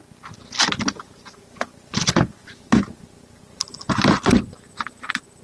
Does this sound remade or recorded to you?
recorded